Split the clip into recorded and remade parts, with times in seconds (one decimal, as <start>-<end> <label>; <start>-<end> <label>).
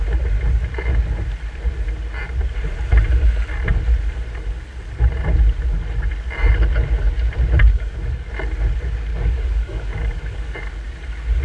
0.0-7.7 recorded; 7.7-8.3 remade; 8.3-9.1 recorded; 9.1-10.6 remade; 10.6-11.4 recorded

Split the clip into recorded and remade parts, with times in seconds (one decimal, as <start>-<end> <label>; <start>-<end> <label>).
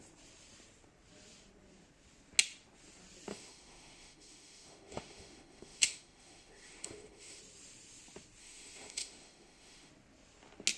0.0-3.3 recorded; 3.3-7.4 remade; 7.4-8.4 recorded; 8.4-9.9 remade; 9.9-10.8 recorded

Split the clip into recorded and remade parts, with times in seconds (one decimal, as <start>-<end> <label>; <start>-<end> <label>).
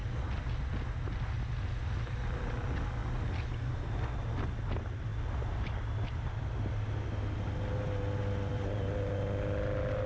0.0-10.1 recorded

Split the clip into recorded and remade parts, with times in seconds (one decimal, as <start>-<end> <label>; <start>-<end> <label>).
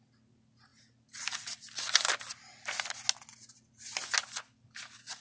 0.0-5.2 recorded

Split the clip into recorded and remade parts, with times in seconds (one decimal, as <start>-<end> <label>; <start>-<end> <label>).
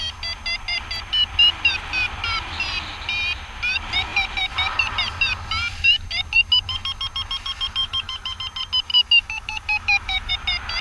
0.0-7.8 recorded; 7.8-8.4 remade; 8.4-8.9 recorded; 8.9-10.3 remade; 10.3-10.8 recorded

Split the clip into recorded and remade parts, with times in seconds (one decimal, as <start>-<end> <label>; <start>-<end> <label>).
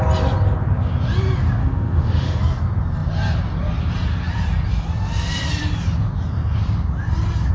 0.0-1.6 recorded; 1.6-2.4 remade; 2.4-7.5 recorded